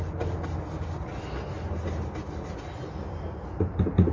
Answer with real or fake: real